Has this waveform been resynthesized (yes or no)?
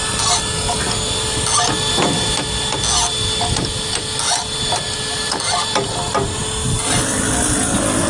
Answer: no